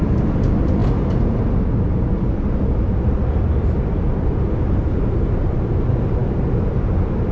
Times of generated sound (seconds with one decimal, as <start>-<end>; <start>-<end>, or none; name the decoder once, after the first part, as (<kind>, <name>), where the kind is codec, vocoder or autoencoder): none